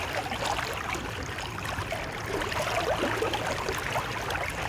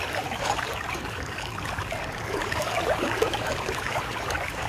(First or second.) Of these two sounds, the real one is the first